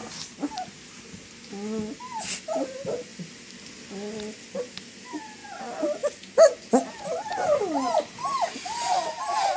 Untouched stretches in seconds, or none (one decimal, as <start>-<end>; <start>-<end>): 0.0-9.6